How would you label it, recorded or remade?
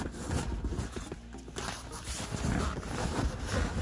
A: recorded